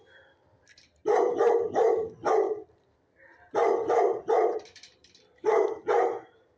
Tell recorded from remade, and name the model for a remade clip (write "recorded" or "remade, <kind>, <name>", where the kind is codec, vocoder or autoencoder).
remade, vocoder, BigVGAN v2